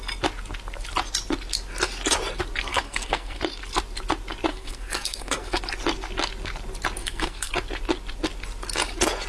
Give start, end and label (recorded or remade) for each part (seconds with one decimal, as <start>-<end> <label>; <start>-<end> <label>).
0.0-2.7 recorded; 2.7-3.4 remade; 3.4-4.5 recorded; 4.5-5.6 remade; 5.6-7.0 recorded; 7.0-7.5 remade; 7.5-9.3 recorded